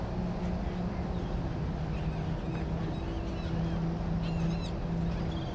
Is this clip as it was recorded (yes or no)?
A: yes